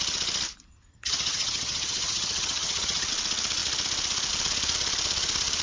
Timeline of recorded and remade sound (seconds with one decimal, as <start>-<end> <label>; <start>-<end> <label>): 0.0-0.9 recorded; 0.9-3.1 remade; 3.1-5.6 recorded